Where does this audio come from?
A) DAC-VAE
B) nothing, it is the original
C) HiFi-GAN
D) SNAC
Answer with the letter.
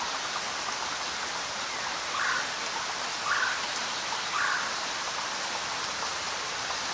B